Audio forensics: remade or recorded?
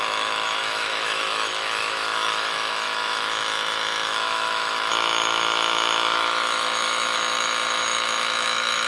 remade